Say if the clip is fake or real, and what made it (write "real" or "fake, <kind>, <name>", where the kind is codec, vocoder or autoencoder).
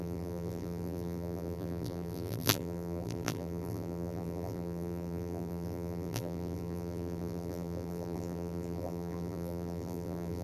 fake, vocoder, BigVGAN v2